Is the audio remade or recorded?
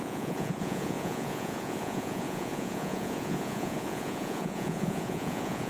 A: remade